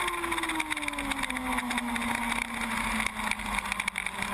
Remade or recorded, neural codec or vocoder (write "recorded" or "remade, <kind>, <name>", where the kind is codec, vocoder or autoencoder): recorded